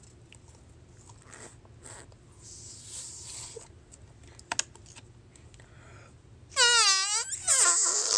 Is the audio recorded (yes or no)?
yes